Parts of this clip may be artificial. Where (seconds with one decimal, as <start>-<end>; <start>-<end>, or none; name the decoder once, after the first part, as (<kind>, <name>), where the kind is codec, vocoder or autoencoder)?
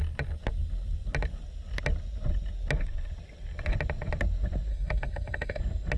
4.7-5.6 (codec, SNAC)